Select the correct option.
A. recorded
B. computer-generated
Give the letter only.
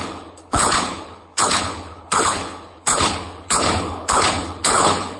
B